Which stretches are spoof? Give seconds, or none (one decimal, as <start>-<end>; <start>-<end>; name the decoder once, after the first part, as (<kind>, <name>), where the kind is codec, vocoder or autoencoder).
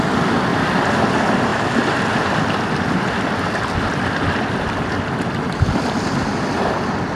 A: 0.5-1.1 (vocoder, BigVGAN v2)